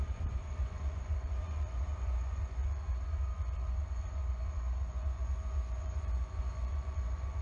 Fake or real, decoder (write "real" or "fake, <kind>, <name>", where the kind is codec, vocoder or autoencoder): fake, vocoder, Vocos